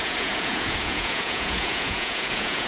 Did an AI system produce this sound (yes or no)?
yes